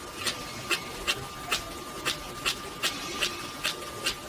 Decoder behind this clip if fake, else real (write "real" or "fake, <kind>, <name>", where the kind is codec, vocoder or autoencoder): real